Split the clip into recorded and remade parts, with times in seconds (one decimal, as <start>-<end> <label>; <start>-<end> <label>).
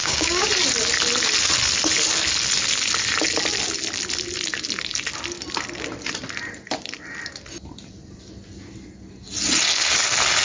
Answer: 0.0-0.5 remade; 0.5-10.4 recorded